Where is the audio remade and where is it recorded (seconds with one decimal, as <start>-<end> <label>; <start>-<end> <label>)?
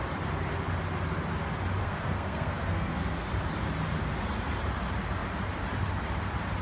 0.0-1.8 recorded; 1.8-3.3 remade; 3.3-6.6 recorded